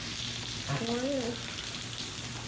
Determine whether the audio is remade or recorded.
recorded